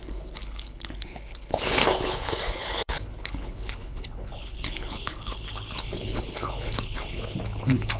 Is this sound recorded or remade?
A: remade